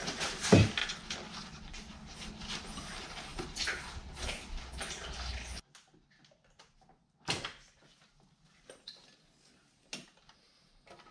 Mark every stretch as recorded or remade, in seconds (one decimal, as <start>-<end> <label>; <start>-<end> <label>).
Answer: 0.0-11.1 recorded

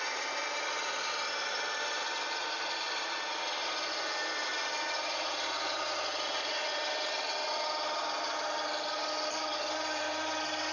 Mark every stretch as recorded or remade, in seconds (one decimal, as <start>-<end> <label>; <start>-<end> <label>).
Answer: 0.0-10.7 recorded

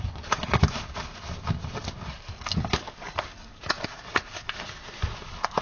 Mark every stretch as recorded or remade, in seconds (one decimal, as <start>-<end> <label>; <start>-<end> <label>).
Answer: 0.0-2.3 recorded; 2.3-3.6 remade; 3.6-5.6 recorded

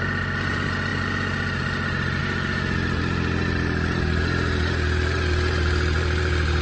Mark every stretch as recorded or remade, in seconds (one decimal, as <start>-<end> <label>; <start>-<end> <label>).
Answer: 0.0-6.6 recorded